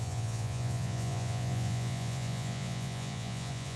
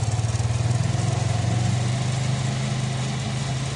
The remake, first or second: first